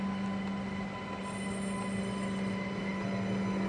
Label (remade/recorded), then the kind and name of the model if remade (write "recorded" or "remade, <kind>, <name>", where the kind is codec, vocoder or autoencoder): recorded